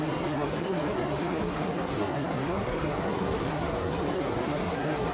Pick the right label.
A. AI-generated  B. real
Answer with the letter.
A